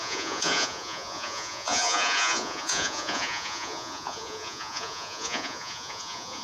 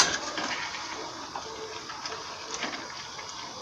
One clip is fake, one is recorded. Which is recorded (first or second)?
second